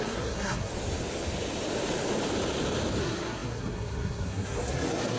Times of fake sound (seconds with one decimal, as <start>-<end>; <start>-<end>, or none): 0.0-0.7; 3.0-5.2